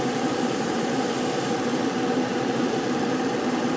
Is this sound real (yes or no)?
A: no